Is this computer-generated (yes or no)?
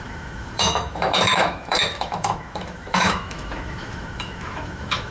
yes